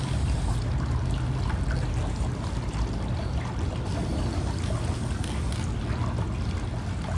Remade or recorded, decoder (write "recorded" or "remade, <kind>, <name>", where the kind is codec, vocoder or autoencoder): recorded